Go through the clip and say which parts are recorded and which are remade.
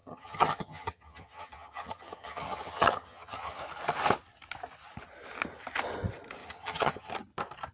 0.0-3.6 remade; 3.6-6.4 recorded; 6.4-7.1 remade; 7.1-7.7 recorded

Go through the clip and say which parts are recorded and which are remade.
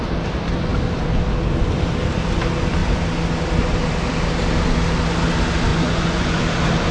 0.0-5.7 recorded; 5.7-6.4 remade; 6.4-6.9 recorded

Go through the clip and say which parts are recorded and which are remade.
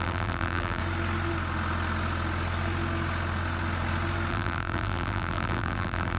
0.0-0.8 remade; 0.8-4.3 recorded; 4.3-6.2 remade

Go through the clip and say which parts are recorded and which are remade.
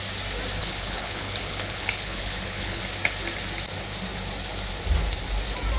0.0-0.6 recorded; 0.6-2.8 remade; 2.8-5.8 recorded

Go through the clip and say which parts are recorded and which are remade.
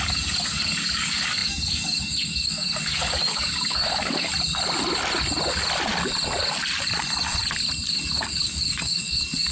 0.0-4.3 remade; 4.3-7.9 recorded; 7.9-9.5 remade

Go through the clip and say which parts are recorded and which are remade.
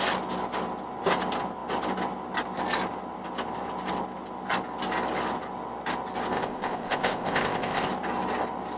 0.0-6.3 recorded; 6.3-7.9 remade; 7.9-8.8 recorded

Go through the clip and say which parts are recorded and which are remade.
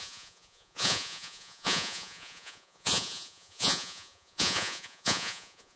0.0-5.8 remade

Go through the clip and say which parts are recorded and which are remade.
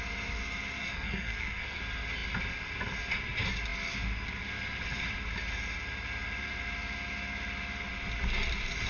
0.0-0.8 recorded; 0.8-1.8 remade; 1.8-8.9 recorded